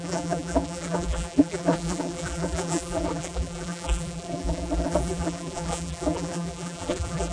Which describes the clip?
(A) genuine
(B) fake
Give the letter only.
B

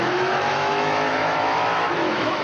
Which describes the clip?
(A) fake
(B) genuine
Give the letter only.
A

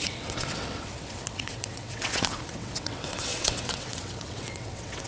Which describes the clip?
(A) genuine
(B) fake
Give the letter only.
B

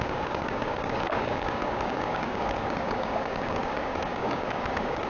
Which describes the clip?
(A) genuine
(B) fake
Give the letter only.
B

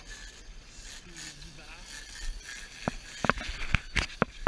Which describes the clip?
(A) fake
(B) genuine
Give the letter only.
B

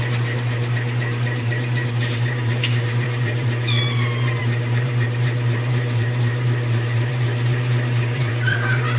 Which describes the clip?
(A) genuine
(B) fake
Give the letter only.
B